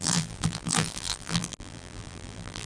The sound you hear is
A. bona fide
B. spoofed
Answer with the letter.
B